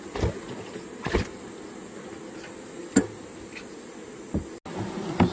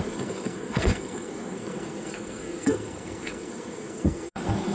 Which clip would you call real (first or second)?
first